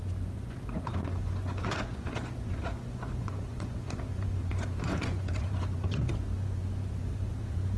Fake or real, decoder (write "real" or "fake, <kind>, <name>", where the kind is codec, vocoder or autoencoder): fake, vocoder, Vocos